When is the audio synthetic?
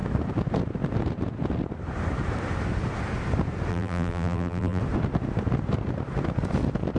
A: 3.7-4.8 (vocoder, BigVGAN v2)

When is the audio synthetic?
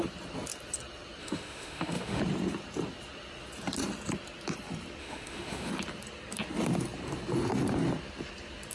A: 1.2-2.2 (autoencoder, DAC-VAE); 5.0-5.7